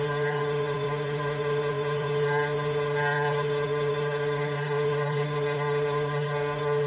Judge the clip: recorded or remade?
remade